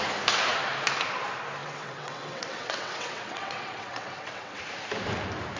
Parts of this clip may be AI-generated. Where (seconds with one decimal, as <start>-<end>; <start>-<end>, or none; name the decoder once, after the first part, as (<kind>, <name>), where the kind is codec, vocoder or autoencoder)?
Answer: 1.6-4.6 (vocoder, WaveNeXt)